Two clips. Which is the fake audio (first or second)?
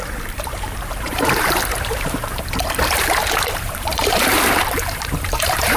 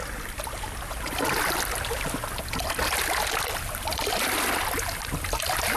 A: first